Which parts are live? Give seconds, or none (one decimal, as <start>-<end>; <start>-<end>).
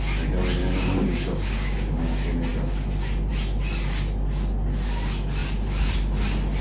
0.0-0.6; 2.0-6.6